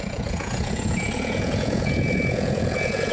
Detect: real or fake fake